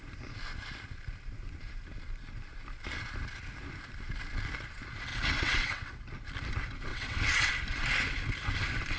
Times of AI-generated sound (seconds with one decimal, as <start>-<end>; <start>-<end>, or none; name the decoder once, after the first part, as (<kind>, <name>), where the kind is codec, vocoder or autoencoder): 5.1-6.0 (vocoder, WaveNeXt); 6.9-7.5

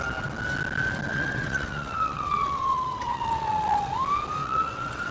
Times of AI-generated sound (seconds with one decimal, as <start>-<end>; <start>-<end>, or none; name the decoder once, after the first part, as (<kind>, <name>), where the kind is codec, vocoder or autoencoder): 1.1-3.9 (vocoder, WaveNeXt); 4.4-5.1